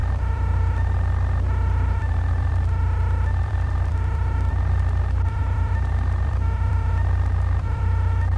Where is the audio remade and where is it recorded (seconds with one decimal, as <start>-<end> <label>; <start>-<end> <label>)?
0.0-8.4 remade